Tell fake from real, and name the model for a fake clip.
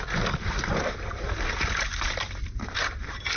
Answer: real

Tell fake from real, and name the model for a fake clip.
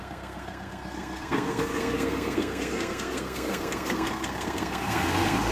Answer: fake, codec, SNAC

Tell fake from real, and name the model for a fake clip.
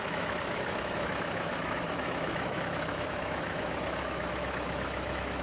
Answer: fake, autoencoder, DAC-VAE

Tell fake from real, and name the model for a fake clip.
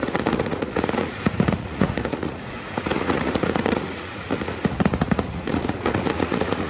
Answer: fake, vocoder, Vocos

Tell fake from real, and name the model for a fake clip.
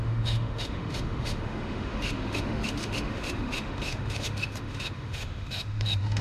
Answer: fake, autoencoder, DAC-VAE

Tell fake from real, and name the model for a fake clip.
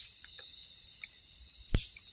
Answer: fake, vocoder, BigVGAN v2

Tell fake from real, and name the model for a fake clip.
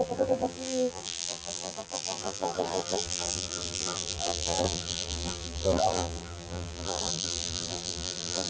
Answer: fake, vocoder, BigVGAN v2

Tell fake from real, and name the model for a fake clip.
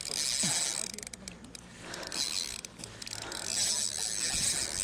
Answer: real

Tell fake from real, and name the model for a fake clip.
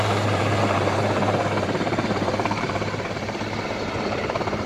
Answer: fake, vocoder, BigVGAN v2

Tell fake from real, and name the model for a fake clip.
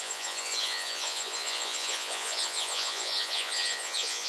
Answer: fake, vocoder, Vocos